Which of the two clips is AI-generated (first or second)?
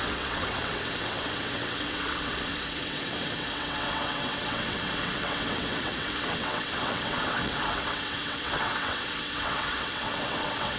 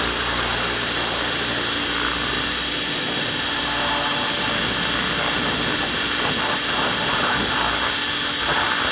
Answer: first